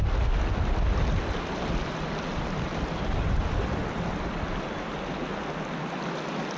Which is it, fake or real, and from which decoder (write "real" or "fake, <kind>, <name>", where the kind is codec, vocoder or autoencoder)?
real